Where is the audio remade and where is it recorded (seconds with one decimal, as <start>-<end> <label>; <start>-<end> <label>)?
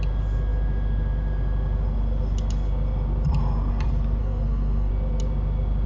0.0-4.2 recorded; 4.2-4.9 remade; 4.9-5.9 recorded